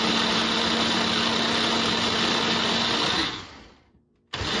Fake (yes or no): no